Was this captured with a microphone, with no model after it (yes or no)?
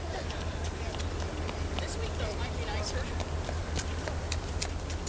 yes